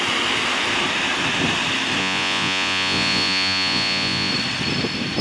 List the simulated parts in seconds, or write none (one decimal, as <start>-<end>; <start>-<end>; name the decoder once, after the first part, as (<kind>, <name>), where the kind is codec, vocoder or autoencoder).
2.0-4.3 (vocoder, Vocos)